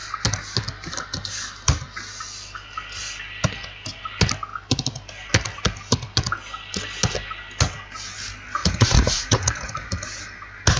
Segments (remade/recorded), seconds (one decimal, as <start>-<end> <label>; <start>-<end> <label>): 0.0-8.6 recorded; 8.6-9.9 remade; 9.9-10.8 recorded

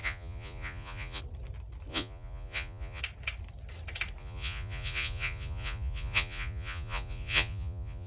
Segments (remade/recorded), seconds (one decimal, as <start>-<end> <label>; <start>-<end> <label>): 0.0-1.2 remade; 1.2-1.9 recorded; 1.9-3.0 remade; 3.0-4.2 recorded; 4.2-8.1 remade